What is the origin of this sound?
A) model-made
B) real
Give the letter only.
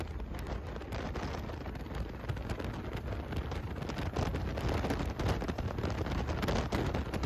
B